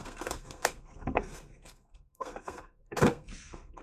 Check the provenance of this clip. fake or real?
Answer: fake